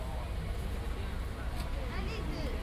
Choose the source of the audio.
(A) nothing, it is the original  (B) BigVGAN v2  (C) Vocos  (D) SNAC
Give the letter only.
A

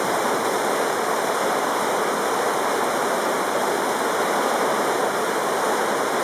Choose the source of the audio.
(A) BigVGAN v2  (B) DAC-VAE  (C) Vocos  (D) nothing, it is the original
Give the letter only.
D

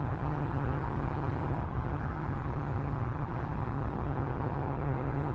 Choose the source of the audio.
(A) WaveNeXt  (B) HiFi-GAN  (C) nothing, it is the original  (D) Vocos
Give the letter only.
B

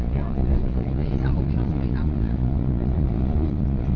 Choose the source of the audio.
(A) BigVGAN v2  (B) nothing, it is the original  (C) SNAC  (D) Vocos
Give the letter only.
D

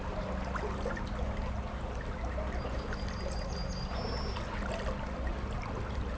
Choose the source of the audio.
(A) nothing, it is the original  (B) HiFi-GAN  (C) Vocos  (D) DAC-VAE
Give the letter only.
A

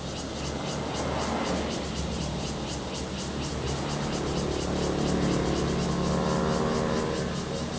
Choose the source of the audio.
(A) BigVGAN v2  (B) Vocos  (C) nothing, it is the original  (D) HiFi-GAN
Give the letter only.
C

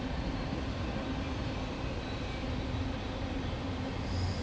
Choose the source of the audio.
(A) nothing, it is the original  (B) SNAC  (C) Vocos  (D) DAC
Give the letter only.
A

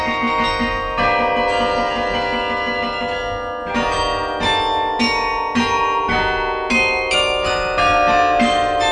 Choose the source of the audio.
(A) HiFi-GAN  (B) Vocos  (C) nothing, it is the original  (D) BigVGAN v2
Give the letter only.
C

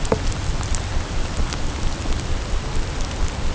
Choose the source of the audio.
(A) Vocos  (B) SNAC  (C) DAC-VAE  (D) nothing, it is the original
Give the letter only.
D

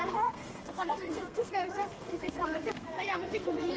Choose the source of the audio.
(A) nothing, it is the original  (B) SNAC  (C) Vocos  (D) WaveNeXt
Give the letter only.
B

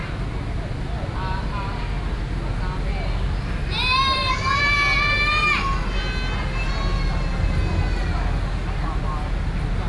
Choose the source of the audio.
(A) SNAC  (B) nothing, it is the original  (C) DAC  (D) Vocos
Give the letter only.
B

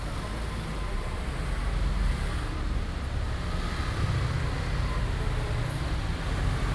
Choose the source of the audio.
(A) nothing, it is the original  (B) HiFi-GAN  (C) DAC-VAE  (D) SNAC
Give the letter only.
A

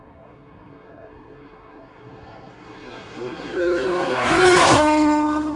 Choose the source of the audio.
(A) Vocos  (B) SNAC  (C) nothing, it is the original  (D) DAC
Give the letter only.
B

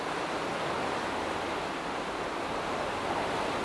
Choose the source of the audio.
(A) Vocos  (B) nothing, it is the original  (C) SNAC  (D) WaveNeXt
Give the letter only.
B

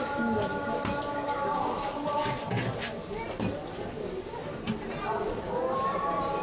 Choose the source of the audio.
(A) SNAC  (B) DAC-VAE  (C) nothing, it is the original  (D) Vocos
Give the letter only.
C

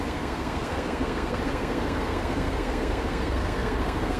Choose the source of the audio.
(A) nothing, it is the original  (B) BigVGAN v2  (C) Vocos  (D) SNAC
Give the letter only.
D